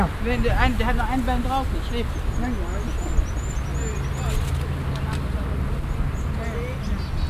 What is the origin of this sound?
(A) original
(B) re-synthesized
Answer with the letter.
A